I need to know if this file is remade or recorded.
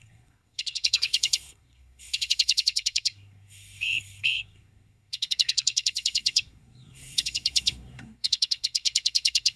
remade